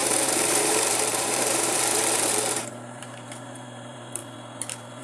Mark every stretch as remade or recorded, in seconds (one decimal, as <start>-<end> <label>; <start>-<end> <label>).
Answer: 0.0-4.2 remade; 4.2-5.0 recorded